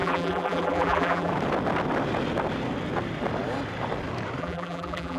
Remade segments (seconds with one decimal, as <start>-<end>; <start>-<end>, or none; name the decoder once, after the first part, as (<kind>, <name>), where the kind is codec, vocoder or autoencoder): 0.0-1.3 (vocoder, BigVGAN v2); 4.4-5.2